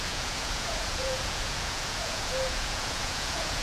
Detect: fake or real fake